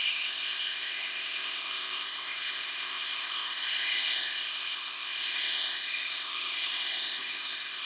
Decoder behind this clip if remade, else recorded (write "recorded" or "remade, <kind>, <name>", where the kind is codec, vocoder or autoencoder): remade, codec, ZipCodec